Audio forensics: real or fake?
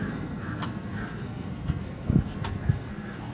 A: fake